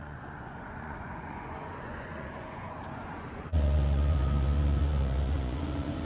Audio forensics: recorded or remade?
remade